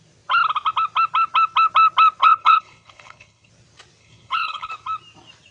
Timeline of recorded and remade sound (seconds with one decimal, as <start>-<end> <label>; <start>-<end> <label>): 0.0-2.2 recorded; 2.2-3.5 remade; 3.5-4.0 recorded; 4.0-4.7 remade; 4.7-5.5 recorded